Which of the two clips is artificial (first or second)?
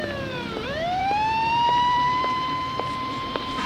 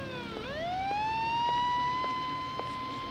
first